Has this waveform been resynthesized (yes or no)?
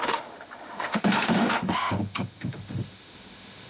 yes